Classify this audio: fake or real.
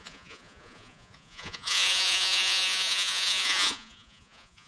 fake